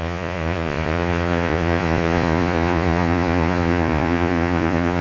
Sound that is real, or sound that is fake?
fake